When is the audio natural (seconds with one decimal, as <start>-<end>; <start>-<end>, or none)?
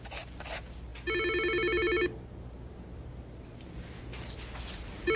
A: 0.0-5.2